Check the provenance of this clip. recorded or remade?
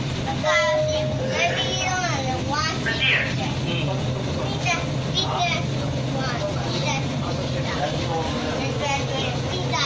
recorded